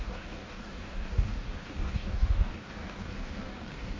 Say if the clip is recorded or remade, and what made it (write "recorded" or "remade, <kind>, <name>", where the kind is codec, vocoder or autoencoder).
remade, codec, DAC